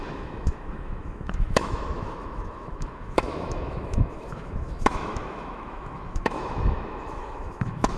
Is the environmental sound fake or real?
fake